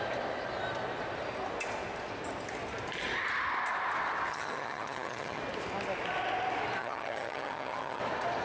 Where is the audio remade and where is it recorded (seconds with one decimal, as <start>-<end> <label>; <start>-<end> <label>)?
0.0-4.3 recorded; 4.3-5.4 remade; 5.4-6.8 recorded; 6.8-8.0 remade; 8.0-8.4 recorded